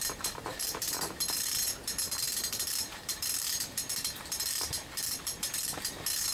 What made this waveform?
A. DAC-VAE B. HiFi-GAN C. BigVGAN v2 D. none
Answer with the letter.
C